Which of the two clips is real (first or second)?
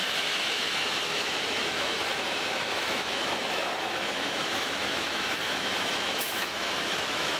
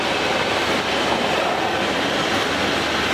second